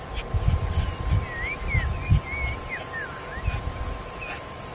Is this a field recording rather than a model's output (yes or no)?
yes